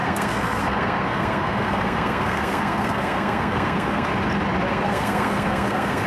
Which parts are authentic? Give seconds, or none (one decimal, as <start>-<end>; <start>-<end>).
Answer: 4.1-4.7